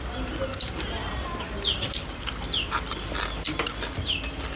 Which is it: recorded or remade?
remade